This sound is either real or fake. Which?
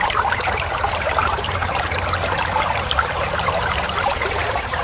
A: fake